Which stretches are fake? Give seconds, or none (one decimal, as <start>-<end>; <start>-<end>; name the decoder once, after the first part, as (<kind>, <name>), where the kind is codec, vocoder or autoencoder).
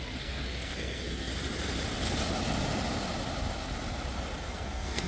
0.0-1.3 (codec, SNAC); 4.4-5.1